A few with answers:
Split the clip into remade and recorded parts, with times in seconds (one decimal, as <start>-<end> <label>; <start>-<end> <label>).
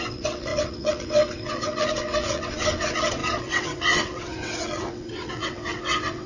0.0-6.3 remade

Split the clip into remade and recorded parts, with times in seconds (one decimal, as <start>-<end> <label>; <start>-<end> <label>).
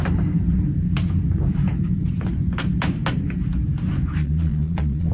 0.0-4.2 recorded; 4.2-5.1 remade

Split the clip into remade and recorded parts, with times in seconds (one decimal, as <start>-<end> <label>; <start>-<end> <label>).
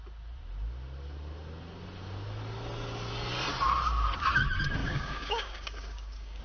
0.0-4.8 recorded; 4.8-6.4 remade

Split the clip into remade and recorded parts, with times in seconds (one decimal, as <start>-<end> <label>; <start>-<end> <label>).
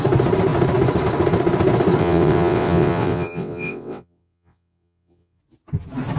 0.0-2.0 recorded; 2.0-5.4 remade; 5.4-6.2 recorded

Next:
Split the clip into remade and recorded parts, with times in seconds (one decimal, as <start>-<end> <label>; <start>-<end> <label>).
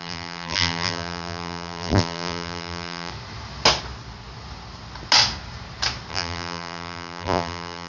0.0-3.1 remade; 3.1-6.1 recorded; 6.1-7.9 remade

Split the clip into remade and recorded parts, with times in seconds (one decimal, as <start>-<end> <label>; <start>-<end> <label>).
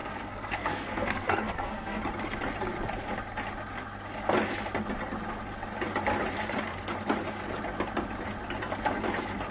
0.0-2.0 remade; 2.0-9.5 recorded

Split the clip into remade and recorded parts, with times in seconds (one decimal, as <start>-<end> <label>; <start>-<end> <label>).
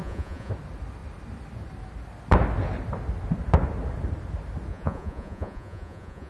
0.0-0.5 remade; 0.5-4.7 recorded; 4.7-6.3 remade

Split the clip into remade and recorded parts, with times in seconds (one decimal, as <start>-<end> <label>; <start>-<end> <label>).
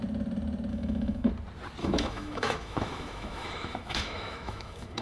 0.0-0.7 recorded; 0.7-1.3 remade; 1.3-1.8 recorded; 1.8-5.0 remade